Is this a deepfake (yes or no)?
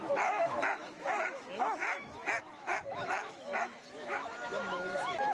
yes